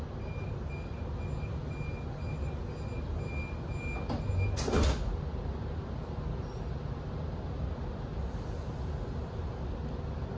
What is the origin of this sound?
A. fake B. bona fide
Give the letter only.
B